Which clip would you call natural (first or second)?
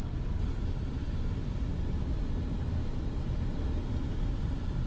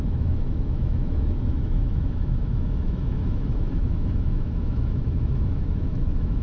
first